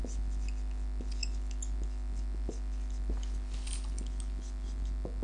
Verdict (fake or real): real